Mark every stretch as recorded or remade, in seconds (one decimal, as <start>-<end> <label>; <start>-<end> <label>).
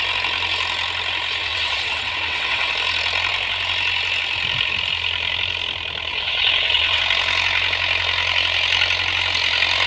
0.0-1.4 recorded; 1.4-2.7 remade; 2.7-6.1 recorded; 6.1-7.0 remade; 7.0-9.9 recorded